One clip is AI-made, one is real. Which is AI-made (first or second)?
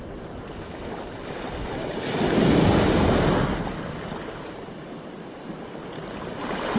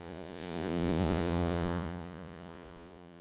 second